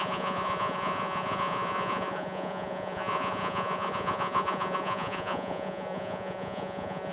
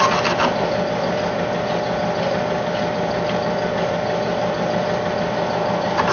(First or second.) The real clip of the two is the second